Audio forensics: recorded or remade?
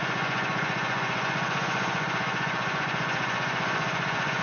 remade